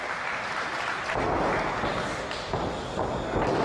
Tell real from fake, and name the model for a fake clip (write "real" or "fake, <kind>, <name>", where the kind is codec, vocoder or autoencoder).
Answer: real